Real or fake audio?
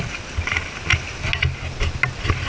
real